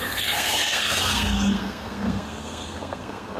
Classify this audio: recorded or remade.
remade